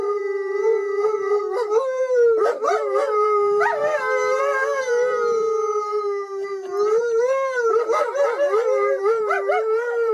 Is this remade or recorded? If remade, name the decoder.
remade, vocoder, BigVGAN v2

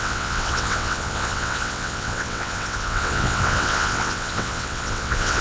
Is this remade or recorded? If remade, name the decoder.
remade, vocoder, WaveNeXt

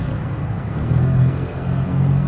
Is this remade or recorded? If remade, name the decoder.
remade, codec, SNAC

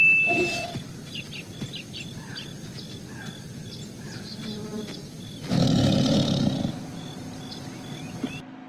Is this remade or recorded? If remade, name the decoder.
recorded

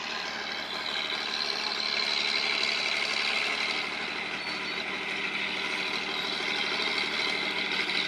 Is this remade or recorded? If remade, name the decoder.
recorded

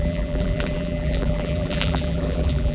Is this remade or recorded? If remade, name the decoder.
remade, vocoder, BigVGAN v2